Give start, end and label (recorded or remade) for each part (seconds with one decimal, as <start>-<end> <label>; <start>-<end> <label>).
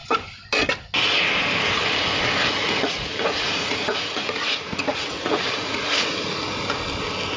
0.0-2.6 recorded; 2.6-6.1 remade; 6.1-7.4 recorded